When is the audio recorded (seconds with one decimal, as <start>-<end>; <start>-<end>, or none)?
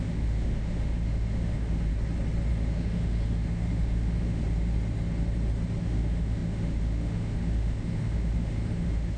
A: 1.9-2.5; 4.4-5.8